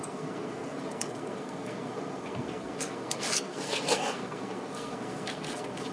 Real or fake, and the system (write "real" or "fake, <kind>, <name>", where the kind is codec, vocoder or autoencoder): fake, codec, SNAC